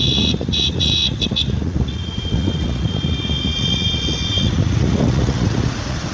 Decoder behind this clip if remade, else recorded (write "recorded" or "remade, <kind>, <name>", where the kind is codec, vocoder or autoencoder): remade, vocoder, Vocos